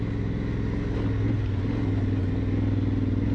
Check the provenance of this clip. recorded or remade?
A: recorded